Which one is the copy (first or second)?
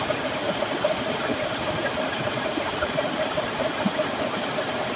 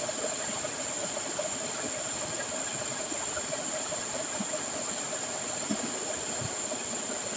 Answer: first